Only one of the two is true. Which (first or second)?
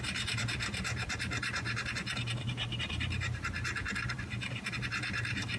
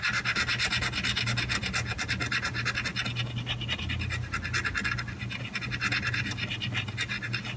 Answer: second